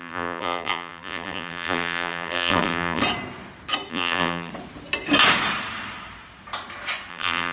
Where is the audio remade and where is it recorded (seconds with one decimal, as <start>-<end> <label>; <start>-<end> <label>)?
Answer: 0.0-3.0 remade; 3.0-3.9 recorded; 3.9-4.5 remade; 4.5-7.1 recorded; 7.1-7.5 remade

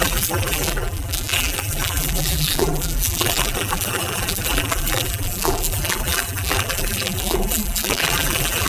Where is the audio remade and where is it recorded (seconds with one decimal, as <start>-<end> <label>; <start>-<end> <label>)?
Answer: 0.0-8.7 remade

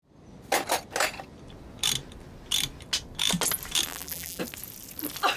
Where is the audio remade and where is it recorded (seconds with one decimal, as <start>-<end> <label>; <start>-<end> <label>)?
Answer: 0.0-3.9 recorded; 3.9-4.4 remade; 4.4-5.4 recorded

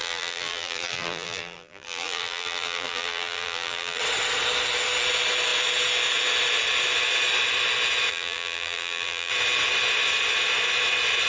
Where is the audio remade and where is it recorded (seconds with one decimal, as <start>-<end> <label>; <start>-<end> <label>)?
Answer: 0.0-4.0 remade; 4.0-8.1 recorded; 8.1-9.3 remade; 9.3-11.3 recorded

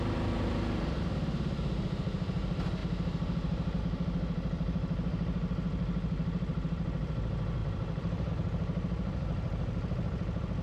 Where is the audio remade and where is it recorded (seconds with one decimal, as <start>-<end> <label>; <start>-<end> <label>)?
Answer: 0.0-7.6 recorded; 7.6-8.3 remade; 8.3-10.6 recorded

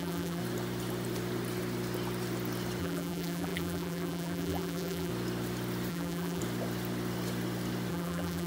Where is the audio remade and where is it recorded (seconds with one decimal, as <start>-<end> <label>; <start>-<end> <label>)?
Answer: 0.0-0.4 remade; 0.4-2.8 recorded; 2.8-5.1 remade; 5.1-5.9 recorded; 5.9-6.4 remade; 6.4-7.9 recorded; 7.9-8.5 remade

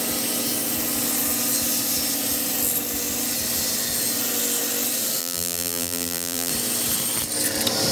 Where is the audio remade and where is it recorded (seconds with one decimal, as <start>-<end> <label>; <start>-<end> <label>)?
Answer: 0.0-5.2 recorded; 5.2-6.5 remade; 6.5-7.9 recorded